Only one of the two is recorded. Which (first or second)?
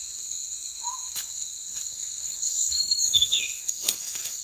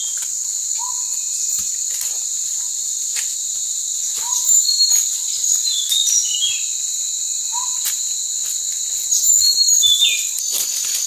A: second